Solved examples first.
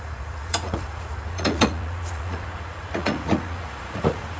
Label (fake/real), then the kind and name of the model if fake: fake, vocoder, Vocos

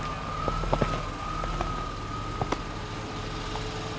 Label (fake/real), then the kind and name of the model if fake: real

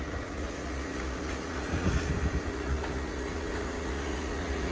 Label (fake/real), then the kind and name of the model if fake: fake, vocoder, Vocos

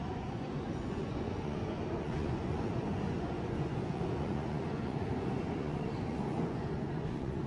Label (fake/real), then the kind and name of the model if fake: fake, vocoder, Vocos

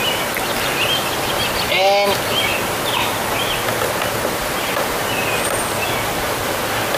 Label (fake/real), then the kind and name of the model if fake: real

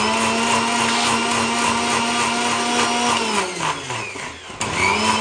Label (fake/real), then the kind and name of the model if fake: real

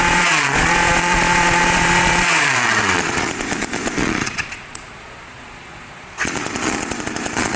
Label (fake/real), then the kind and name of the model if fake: fake, vocoder, Vocos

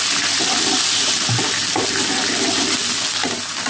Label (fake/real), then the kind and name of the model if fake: real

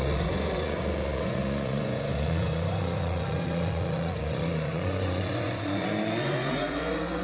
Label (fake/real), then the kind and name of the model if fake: fake, vocoder, Vocos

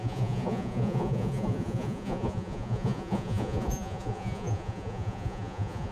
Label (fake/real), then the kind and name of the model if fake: fake, vocoder, Vocos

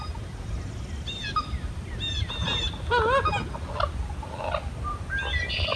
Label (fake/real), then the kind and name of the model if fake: real